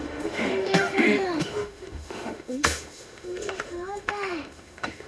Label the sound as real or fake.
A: fake